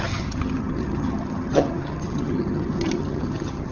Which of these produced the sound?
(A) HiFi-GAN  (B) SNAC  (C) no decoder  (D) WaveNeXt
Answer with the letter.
A